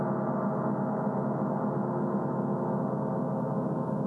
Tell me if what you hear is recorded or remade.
recorded